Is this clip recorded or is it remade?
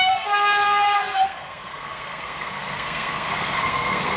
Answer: remade